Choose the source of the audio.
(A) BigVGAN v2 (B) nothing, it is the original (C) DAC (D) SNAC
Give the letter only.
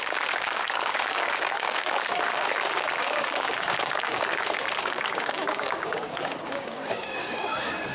C